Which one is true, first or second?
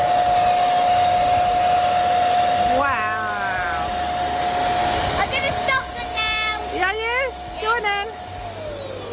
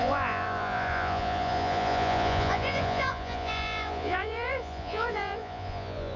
first